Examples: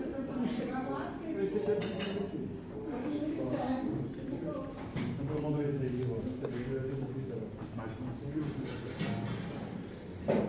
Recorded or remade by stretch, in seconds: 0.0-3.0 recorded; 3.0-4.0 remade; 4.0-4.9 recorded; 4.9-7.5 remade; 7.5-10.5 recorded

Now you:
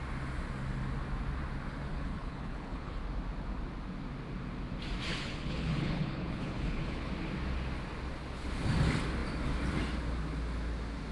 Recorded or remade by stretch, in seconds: 0.0-1.9 recorded; 1.9-3.0 remade; 3.0-5.1 recorded; 5.1-7.1 remade; 7.1-11.1 recorded

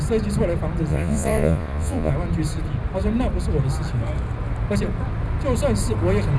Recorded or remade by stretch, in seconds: 0.0-0.9 recorded; 0.9-2.1 remade; 2.1-6.4 recorded

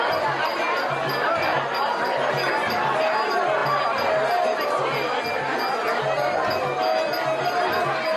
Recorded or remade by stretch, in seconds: 0.0-8.2 recorded

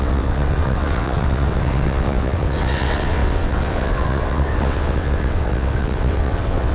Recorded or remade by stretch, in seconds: 0.0-6.7 remade

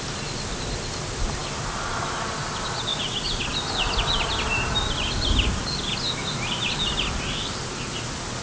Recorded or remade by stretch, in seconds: 0.0-8.4 recorded

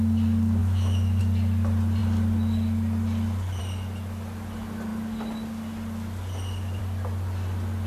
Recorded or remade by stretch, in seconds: 0.0-0.6 recorded; 0.6-1.2 remade; 1.2-7.9 recorded

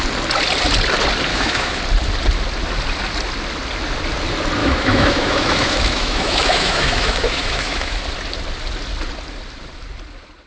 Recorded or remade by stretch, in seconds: 0.0-1.3 recorded; 1.3-1.8 remade; 1.8-4.6 recorded; 4.6-8.0 remade; 8.0-10.5 recorded